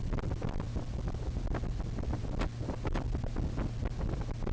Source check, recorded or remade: recorded